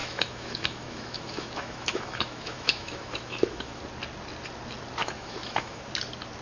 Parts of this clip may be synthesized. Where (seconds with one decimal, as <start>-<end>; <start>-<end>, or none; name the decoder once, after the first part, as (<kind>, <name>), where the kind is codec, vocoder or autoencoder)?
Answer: 0.0-3.8 (autoencoder, DAC-VAE); 5.0-5.8